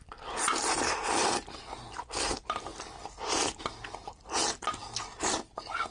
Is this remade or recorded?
recorded